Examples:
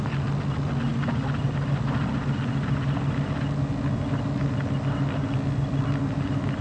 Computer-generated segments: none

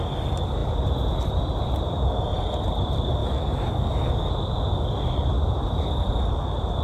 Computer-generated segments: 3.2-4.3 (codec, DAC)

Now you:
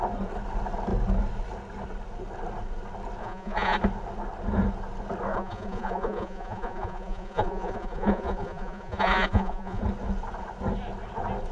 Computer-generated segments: 3.2-3.8 (vocoder, Vocos); 5.3-9.8

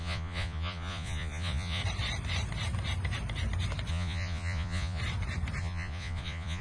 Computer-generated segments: 0.0-1.8 (vocoder, Vocos); 3.9-5.0; 5.6-6.6

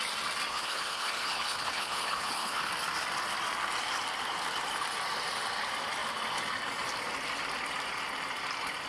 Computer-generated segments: 0.5-2.7 (codec, HILCodec)